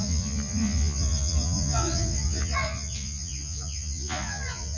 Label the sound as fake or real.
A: fake